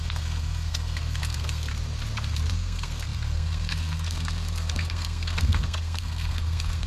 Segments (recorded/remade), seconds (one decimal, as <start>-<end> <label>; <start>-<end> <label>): 0.0-1.7 remade; 1.7-2.5 recorded; 2.5-6.9 remade